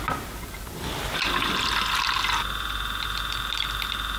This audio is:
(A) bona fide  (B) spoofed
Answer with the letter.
A